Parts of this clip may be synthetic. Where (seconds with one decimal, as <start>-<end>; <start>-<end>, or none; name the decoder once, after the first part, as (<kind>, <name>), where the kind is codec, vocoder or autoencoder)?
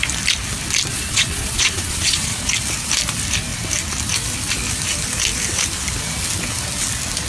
0.9-2.5 (vocoder, Vocos)